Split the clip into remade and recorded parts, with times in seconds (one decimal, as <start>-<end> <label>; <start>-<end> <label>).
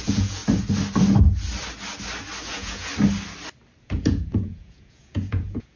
0.0-0.4 remade; 0.4-2.4 recorded; 2.4-2.9 remade; 2.9-3.8 recorded; 3.8-5.8 remade